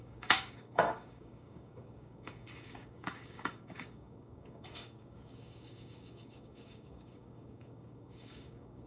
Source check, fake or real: fake